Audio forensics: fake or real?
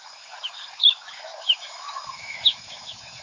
fake